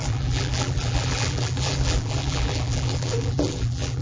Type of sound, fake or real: fake